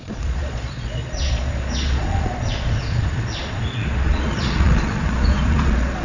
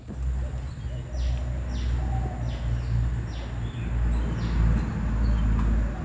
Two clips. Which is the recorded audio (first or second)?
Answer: second